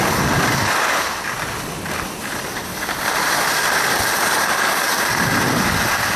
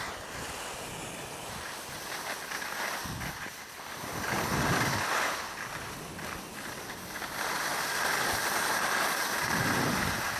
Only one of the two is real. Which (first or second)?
first